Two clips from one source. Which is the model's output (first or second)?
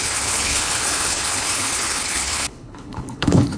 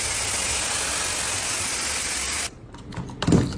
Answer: first